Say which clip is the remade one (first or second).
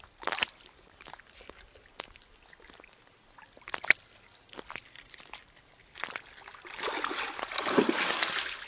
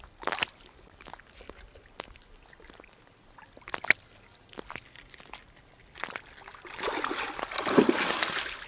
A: first